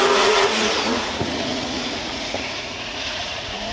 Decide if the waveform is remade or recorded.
remade